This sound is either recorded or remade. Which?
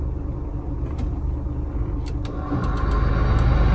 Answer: recorded